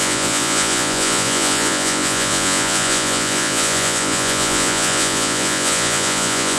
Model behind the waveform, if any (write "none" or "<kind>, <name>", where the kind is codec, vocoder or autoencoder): vocoder, Vocos